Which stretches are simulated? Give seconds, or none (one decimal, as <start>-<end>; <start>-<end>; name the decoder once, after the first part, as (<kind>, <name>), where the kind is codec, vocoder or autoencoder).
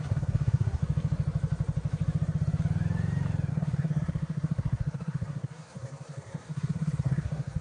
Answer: 0.0-0.8 (codec, SNAC); 3.5-7.6